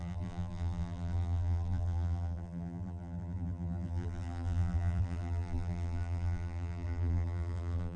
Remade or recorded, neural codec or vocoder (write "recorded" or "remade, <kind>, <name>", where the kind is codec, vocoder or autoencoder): remade, vocoder, BigVGAN v2